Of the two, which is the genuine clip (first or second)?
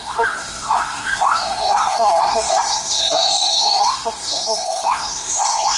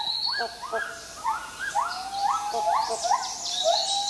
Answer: second